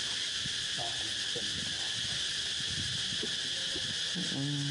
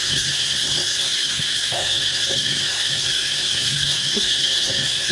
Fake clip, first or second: second